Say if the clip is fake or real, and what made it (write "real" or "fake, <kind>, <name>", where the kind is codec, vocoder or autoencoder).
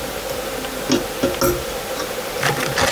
real